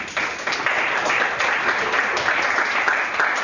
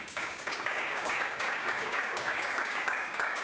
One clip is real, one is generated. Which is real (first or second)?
first